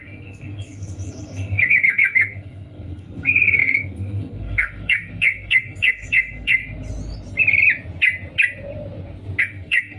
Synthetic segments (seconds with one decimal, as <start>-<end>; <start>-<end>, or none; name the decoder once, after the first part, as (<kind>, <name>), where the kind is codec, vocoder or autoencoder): 0.0-6.6 (codec, SNAC); 9.4-10.0